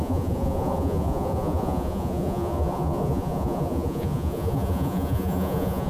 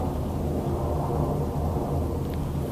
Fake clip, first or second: first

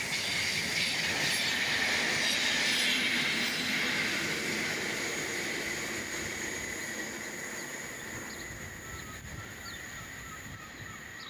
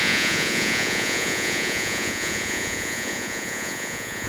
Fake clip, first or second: second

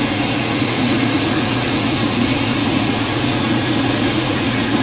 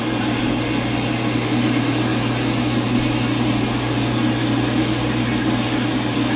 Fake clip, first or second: first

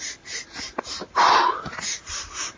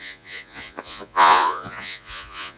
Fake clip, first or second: second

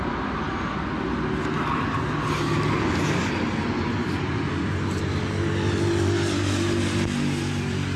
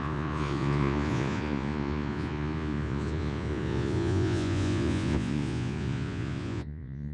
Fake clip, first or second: second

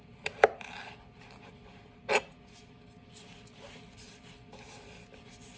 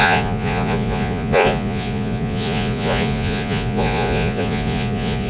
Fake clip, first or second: second